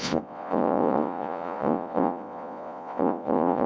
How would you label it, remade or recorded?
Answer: remade